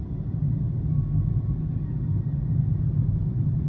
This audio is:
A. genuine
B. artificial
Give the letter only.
A